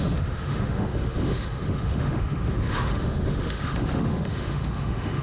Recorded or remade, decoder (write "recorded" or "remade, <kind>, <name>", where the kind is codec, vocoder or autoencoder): remade, autoencoder, DAC-VAE